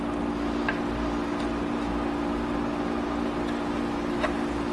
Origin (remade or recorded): recorded